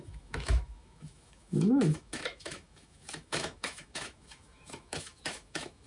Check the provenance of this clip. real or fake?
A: fake